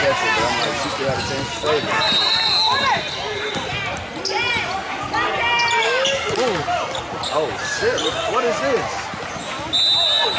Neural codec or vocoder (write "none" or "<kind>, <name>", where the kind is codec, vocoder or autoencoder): none